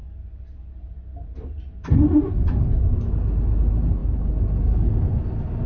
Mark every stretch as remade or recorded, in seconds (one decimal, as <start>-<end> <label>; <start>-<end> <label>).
0.0-0.7 remade; 0.7-5.7 recorded